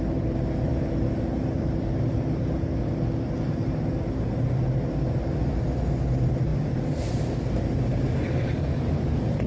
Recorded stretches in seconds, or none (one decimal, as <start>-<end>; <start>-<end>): 0.0-9.5